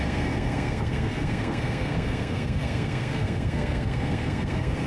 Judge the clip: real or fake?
fake